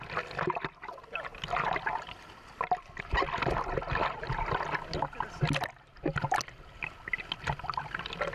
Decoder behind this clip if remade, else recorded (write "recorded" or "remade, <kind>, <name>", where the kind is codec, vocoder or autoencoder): recorded